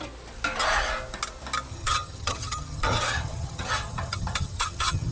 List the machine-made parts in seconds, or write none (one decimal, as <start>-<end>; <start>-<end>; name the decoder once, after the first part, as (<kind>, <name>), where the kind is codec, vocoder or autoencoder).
1.7-5.1 (vocoder, HiFi-GAN)